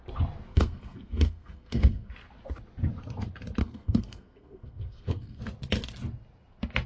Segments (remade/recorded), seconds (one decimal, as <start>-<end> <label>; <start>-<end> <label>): 0.0-0.5 recorded; 0.5-2.1 remade; 2.1-3.6 recorded; 3.6-5.4 remade; 5.4-6.9 recorded